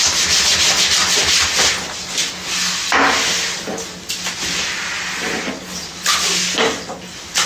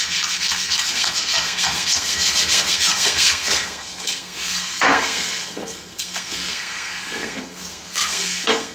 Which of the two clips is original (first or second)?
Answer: first